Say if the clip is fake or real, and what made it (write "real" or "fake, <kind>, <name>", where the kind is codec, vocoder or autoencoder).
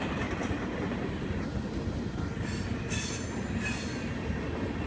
real